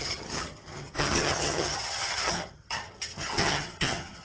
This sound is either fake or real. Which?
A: fake